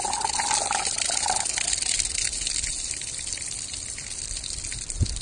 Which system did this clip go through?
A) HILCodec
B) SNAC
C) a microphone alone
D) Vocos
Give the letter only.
C